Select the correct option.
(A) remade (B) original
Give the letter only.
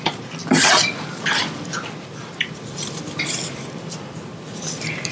A